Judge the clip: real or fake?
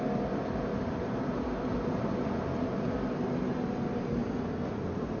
real